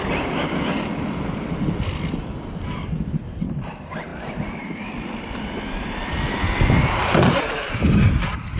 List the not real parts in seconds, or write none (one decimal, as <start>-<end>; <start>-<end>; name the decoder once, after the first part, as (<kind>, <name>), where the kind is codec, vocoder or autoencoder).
none